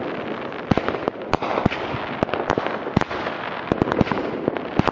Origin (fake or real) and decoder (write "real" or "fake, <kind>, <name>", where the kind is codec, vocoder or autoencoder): real